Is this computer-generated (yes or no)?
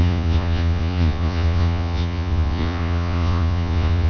yes